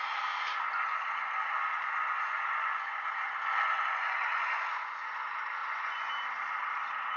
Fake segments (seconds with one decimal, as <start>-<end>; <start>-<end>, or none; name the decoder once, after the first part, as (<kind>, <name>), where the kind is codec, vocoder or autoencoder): 0.7-5.0 (vocoder, Vocos); 5.6-6.1